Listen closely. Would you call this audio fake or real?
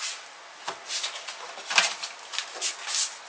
real